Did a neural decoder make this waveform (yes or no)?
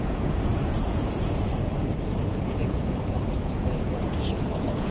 yes